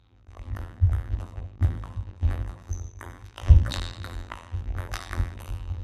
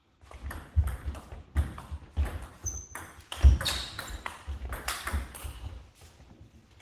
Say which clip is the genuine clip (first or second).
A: second